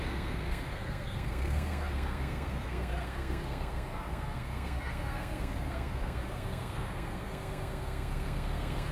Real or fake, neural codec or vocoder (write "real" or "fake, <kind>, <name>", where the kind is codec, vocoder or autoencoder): fake, codec, SNAC